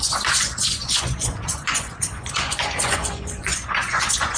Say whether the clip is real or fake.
fake